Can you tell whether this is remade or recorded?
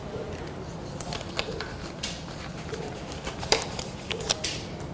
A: recorded